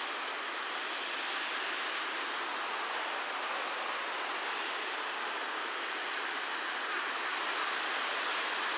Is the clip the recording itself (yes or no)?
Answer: yes